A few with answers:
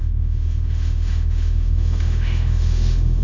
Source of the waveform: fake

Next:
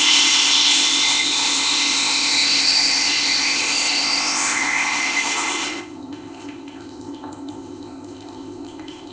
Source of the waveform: fake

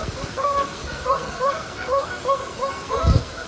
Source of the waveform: fake